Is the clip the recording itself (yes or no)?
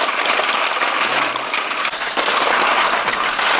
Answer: yes